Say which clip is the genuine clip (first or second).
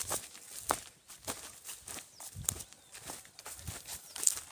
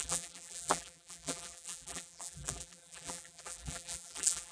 first